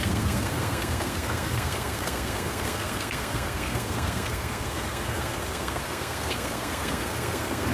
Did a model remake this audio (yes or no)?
yes